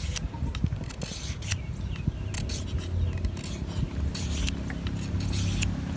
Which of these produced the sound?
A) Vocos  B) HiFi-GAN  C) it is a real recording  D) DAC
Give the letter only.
C